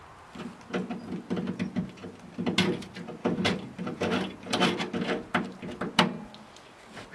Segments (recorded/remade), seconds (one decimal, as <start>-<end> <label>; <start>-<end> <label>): 0.0-3.2 recorded; 3.2-4.8 remade; 4.8-7.1 recorded